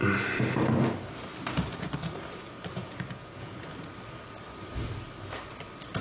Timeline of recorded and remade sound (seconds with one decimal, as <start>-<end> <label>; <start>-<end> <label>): 0.0-2.8 recorded; 2.8-3.6 remade; 3.6-6.0 recorded